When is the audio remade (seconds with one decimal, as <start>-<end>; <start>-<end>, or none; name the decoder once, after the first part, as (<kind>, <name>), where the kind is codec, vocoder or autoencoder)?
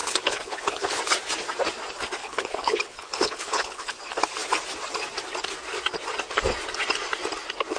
0.0-1.0 (codec, HILCodec); 2.2-3.9